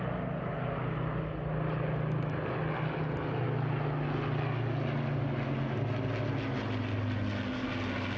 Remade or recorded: recorded